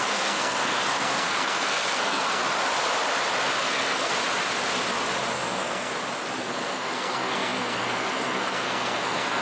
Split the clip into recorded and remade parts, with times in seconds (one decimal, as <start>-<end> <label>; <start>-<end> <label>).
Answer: 0.0-2.4 remade; 2.4-3.6 recorded; 3.6-4.1 remade; 4.1-5.3 recorded; 5.3-5.9 remade; 5.9-6.4 recorded; 6.4-9.4 remade